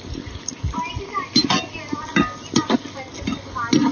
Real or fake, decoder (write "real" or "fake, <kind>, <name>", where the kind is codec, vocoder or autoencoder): real